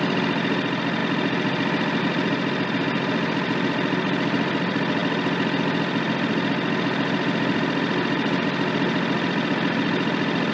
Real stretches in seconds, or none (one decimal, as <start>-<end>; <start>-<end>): 0.0-10.5